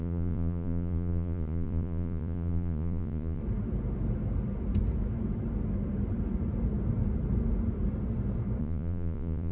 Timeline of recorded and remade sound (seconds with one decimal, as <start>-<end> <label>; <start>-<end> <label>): 0.0-3.4 remade; 3.4-8.6 recorded; 8.6-9.5 remade